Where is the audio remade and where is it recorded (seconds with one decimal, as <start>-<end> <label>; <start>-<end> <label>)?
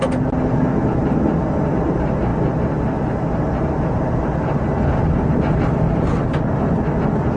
0.0-5.0 recorded; 5.0-6.8 remade; 6.8-7.4 recorded